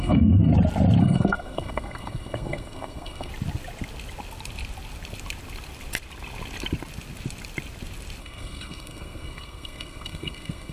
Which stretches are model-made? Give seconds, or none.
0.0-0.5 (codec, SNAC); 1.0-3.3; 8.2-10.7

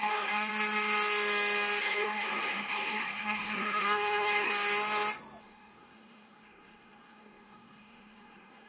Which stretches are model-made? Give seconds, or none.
0.0-0.5 (codec, SNAC); 1.8-4.5; 5.4-8.7

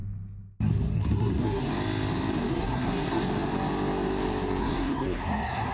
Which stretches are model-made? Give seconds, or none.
0.7-1.7 (codec, SNAC); 2.5-3.2; 4.6-5.7

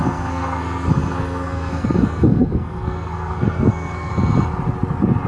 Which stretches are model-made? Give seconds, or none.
0.0-4.1 (codec, SNAC)

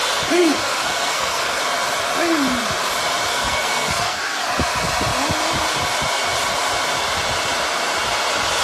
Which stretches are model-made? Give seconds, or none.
0.0-1.6 (codec, SNAC); 3.3-4.2